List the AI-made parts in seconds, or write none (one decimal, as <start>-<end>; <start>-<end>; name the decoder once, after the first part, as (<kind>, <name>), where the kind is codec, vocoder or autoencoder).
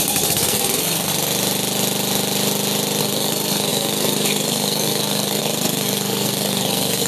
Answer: 0.0-1.1 (codec, SNAC); 3.0-7.1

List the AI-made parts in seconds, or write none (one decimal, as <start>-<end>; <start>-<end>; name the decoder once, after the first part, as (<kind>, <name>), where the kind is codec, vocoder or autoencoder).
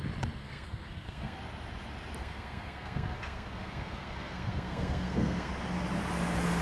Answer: 0.4-1.4 (codec, SNAC); 2.2-5.5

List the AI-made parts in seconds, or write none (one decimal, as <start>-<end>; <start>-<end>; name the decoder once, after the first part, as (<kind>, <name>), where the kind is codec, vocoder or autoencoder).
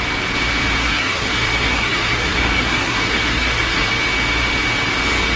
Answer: 0.8-3.9 (codec, SNAC)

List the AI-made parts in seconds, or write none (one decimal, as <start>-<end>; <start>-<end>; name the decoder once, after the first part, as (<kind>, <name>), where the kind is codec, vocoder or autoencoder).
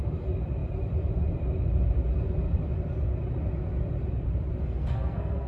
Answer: 4.6-5.5 (codec, SNAC)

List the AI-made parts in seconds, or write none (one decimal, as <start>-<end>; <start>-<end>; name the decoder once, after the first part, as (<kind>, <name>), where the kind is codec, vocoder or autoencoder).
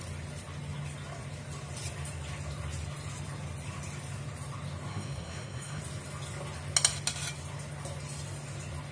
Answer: 4.9-5.8 (codec, SNAC)